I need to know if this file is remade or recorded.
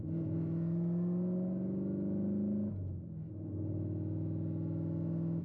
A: recorded